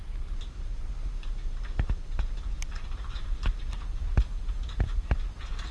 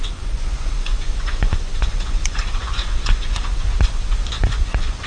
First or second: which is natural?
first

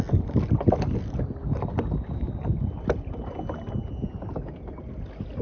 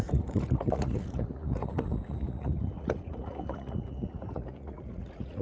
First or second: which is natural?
first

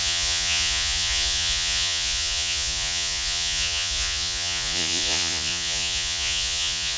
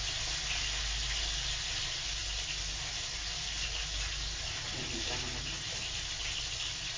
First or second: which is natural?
second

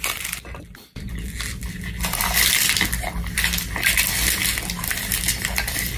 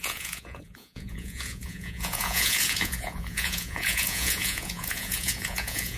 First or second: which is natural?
first